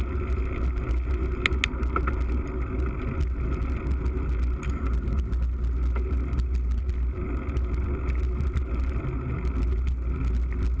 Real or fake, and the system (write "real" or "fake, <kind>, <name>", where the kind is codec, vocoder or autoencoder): real